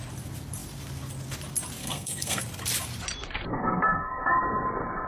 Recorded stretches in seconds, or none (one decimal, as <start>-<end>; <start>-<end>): 0.0-1.8; 2.4-3.5; 4.4-5.1